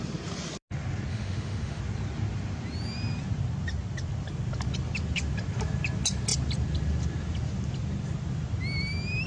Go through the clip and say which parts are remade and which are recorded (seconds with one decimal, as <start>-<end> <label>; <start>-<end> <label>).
0.0-1.1 recorded; 1.1-1.8 remade; 1.8-9.3 recorded